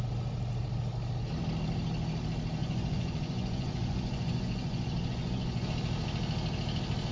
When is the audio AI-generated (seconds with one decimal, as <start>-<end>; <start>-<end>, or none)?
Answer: 2.6-5.7